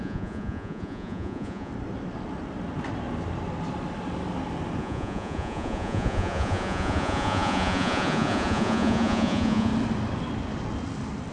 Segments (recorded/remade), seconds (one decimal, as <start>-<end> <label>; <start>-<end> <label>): 0.0-1.7 remade; 1.7-4.8 recorded; 4.8-9.7 remade; 9.7-11.3 recorded